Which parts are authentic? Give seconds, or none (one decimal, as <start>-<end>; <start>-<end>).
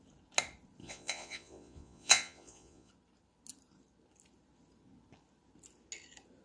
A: 0.0-0.8; 2.9-6.4